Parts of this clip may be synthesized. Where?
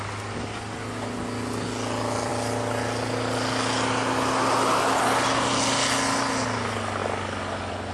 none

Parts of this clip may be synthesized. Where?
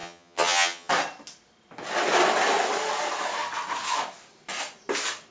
0.0-0.9 (vocoder, HiFi-GAN)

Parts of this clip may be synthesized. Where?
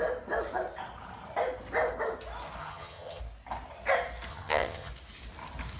2.6-3.2 (vocoder, HiFi-GAN); 4.3-4.9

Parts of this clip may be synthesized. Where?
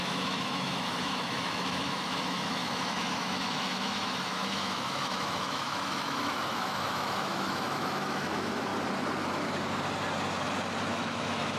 0.0-8.7 (autoencoder, DAC-VAE); 10.9-11.6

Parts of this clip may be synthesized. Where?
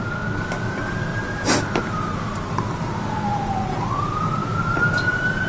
1.1-1.9 (vocoder, BigVGAN v2)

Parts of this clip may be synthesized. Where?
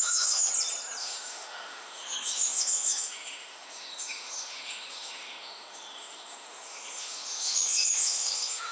0.0-0.5 (autoencoder, DAC-VAE); 1.0-8.7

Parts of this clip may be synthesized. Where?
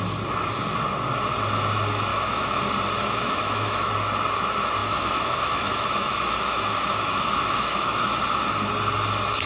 2.1-2.6 (autoencoder, DAC-VAE); 3.0-3.9; 4.8-8.2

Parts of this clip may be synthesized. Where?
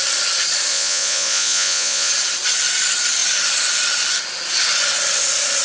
0.7-2.1 (vocoder, Vocos)